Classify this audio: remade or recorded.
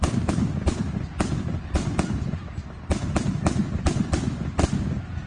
recorded